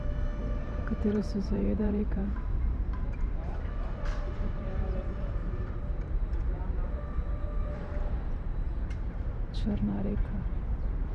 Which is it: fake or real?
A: fake